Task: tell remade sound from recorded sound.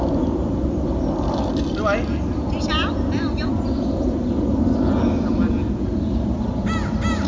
recorded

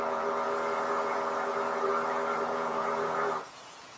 remade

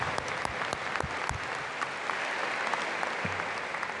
recorded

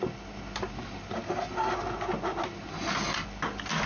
recorded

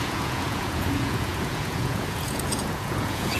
remade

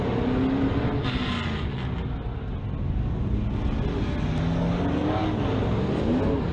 recorded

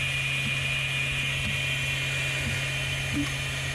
recorded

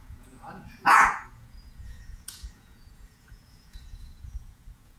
remade